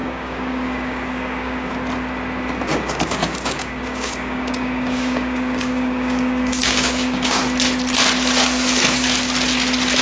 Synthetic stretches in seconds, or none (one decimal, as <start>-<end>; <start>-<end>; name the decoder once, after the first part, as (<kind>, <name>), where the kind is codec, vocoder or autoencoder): 0.0-1.7 (codec, DAC); 2.7-7.4